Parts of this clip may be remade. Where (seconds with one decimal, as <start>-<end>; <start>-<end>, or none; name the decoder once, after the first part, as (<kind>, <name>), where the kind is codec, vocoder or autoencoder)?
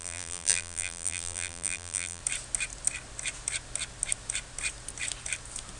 0.0-2.2 (vocoder, BigVGAN v2)